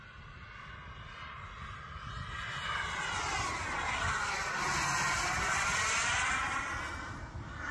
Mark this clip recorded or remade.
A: recorded